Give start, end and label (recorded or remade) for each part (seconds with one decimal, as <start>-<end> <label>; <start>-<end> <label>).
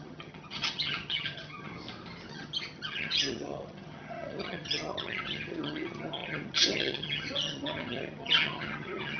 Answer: 0.0-1.7 remade; 1.7-2.3 recorded; 2.3-9.2 remade